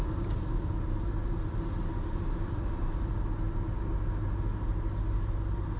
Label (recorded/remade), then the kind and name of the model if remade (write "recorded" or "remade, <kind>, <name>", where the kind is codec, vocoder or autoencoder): recorded